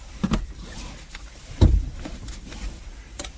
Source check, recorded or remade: remade